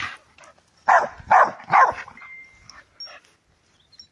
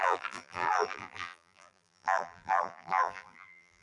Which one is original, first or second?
first